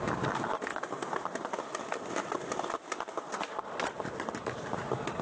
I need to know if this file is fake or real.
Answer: real